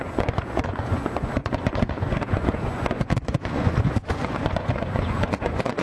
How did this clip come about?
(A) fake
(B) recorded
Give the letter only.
A